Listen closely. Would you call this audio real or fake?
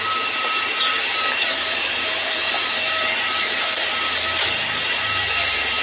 fake